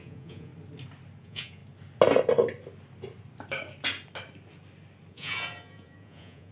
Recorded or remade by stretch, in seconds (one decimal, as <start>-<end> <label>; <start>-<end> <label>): 0.0-0.5 remade; 0.5-1.2 recorded; 1.2-1.6 remade; 1.6-5.1 recorded; 5.1-6.5 remade